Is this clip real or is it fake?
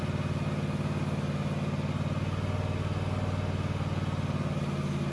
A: real